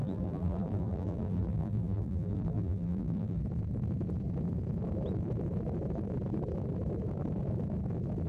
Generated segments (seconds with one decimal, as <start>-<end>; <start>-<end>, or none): 0.0-3.4